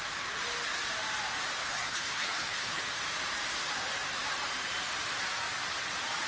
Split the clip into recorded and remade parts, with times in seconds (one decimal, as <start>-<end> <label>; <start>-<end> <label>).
0.0-1.6 recorded; 1.6-2.8 remade; 2.8-6.3 recorded